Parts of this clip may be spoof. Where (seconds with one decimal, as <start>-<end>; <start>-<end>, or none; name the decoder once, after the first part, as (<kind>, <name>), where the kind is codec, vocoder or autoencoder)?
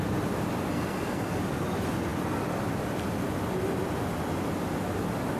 0.7-1.4 (codec, SNAC)